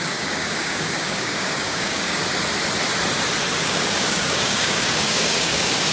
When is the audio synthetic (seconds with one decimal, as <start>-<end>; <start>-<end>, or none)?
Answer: 0.0-2.2; 3.6-5.9